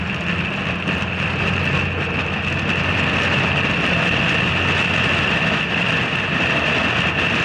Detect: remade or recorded recorded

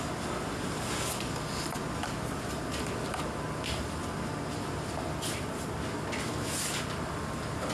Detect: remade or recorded recorded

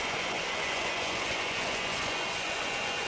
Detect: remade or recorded remade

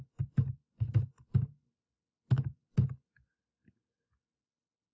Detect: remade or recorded recorded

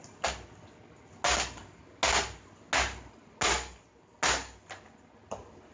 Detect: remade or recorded recorded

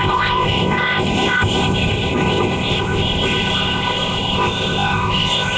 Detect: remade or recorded remade